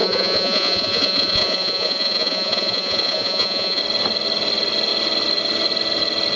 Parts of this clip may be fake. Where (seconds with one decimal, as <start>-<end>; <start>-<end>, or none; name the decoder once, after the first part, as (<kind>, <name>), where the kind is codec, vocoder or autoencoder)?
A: 0.0-3.8 (vocoder, Vocos)